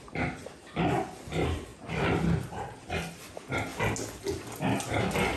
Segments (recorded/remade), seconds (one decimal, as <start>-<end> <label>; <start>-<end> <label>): 0.0-5.4 recorded